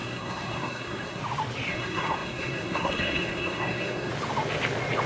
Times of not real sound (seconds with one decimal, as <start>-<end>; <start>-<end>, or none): 0.0-1.2; 1.7-4.1